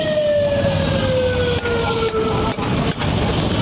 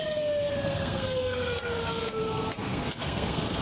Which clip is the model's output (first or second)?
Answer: second